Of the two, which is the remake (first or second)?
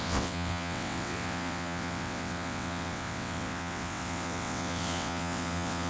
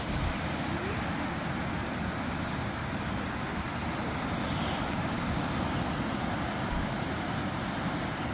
first